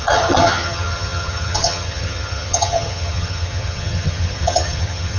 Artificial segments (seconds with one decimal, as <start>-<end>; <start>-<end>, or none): 0.0-5.2